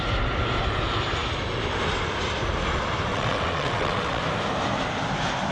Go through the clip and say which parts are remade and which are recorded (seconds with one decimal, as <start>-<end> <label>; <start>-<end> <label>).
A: 0.0-3.1 recorded; 3.1-4.2 remade; 4.2-5.5 recorded